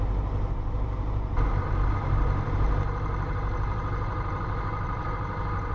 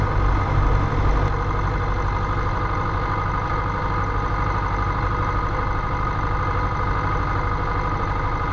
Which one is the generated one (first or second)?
first